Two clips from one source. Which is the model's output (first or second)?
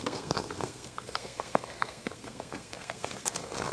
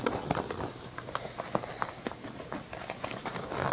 first